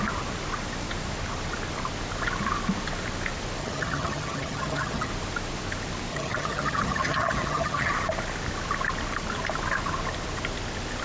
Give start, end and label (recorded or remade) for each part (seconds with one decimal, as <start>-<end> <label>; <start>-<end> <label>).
0.0-3.6 recorded; 3.6-5.1 remade; 5.1-6.1 recorded; 6.1-7.9 remade; 7.9-11.0 recorded